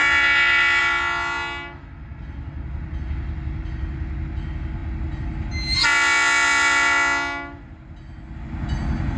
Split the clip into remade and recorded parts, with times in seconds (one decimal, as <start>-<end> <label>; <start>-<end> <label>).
0.0-9.2 recorded